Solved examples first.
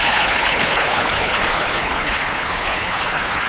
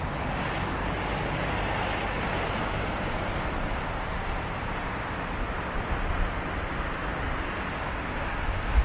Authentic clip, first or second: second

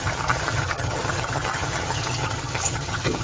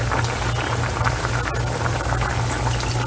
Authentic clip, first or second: second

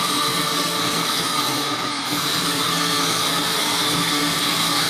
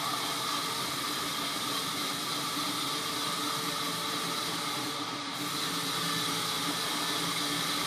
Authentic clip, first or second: second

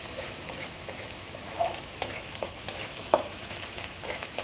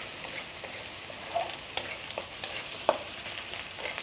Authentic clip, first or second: second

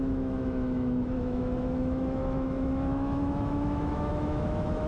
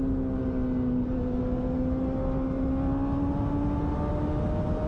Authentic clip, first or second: second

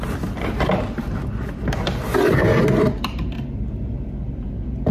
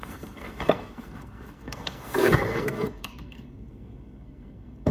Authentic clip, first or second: first